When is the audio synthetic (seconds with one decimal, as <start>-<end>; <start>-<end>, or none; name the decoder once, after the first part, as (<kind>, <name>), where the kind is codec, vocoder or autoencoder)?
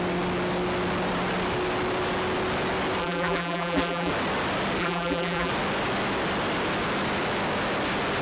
3.0-4.1 (vocoder, BigVGAN v2); 4.8-5.5